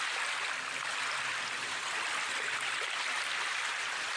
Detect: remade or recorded recorded